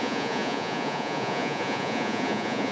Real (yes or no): no